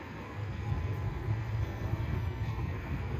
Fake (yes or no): yes